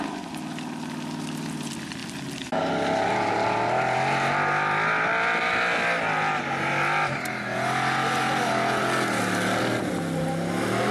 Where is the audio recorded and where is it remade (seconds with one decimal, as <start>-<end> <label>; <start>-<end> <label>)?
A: 0.0-10.9 recorded